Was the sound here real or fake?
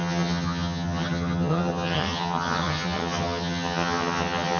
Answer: fake